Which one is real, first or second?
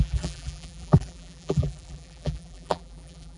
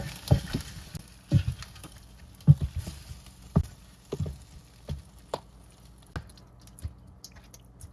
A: second